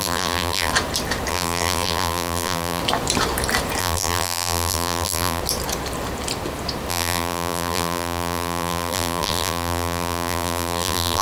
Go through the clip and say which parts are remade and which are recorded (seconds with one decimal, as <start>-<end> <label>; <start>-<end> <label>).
0.0-0.7 remade; 0.7-1.3 recorded; 1.3-2.8 remade; 2.8-3.8 recorded; 3.8-5.4 remade; 5.4-6.9 recorded; 6.9-11.2 remade